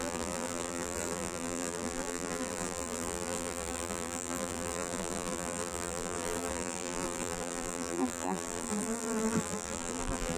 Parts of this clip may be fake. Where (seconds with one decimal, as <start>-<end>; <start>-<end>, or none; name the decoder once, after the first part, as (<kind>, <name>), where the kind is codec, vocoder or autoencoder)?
0.0-10.4 (vocoder, BigVGAN v2)